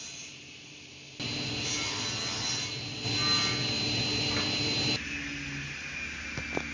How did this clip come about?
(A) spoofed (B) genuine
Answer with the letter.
B